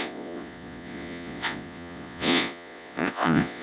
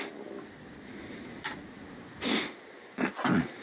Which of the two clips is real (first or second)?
second